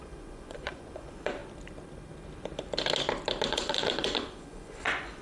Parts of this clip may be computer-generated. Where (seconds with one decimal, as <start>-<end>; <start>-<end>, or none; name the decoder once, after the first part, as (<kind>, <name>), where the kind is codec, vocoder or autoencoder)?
0.0-1.4 (vocoder, Vocos); 3.5-5.2

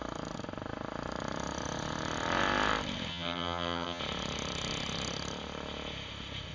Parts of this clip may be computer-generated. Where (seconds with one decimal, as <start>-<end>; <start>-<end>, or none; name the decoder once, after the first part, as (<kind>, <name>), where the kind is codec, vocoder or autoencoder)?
3.1-4.0 (vocoder, HiFi-GAN)

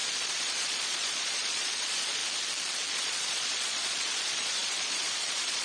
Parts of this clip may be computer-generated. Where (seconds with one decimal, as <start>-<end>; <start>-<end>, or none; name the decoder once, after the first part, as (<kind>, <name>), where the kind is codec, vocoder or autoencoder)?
0.0-2.2 (vocoder, Vocos); 2.9-5.6

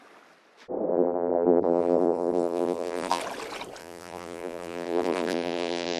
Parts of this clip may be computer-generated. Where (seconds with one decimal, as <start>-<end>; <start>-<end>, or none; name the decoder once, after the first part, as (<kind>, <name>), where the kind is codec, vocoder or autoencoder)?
0.9-3.2 (vocoder, BigVGAN v2); 3.8-6.0